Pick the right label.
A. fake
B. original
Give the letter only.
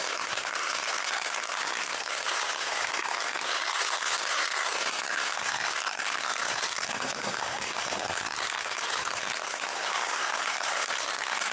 A